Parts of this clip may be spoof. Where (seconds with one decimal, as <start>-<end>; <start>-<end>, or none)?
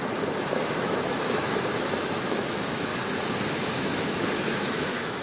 0.7-2.9; 3.5-5.2